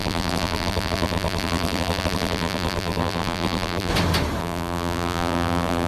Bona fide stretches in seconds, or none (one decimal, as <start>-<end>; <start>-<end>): 3.9-4.4